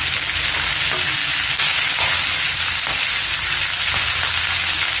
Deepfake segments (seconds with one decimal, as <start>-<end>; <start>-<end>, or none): none